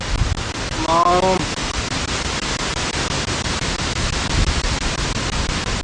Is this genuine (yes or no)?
yes